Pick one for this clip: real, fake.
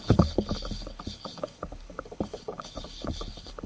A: fake